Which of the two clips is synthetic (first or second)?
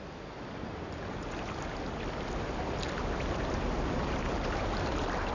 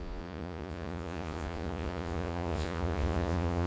second